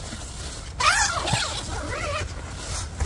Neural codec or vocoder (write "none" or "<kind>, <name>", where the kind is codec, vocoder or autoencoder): none